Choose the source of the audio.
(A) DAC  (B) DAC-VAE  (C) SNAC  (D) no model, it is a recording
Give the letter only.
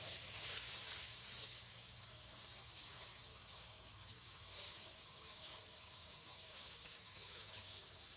A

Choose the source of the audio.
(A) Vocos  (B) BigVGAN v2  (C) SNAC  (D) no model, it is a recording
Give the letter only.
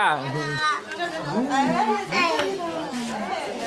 D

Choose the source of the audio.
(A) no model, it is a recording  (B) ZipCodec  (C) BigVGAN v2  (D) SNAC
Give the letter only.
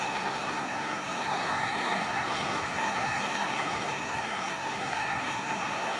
D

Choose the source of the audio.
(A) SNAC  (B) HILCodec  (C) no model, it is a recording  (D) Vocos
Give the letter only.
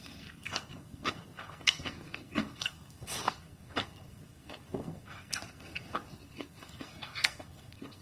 A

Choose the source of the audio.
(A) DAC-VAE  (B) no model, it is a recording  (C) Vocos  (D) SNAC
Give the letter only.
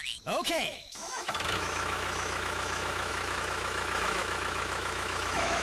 A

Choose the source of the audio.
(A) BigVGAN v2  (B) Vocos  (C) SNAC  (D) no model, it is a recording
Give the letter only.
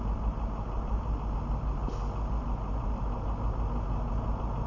D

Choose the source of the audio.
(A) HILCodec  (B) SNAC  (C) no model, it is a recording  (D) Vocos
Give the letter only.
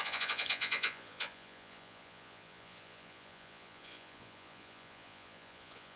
D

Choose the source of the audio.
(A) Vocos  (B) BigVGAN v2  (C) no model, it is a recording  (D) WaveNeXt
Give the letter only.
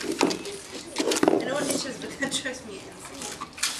C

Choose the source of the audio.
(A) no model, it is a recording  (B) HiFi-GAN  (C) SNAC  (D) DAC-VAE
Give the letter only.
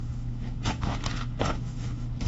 D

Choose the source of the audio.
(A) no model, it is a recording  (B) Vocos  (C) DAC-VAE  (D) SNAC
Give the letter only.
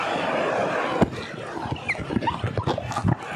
A